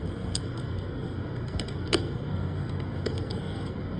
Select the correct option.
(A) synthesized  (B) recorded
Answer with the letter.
A